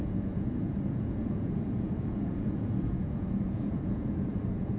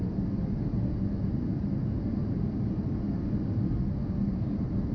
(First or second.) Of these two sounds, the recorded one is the second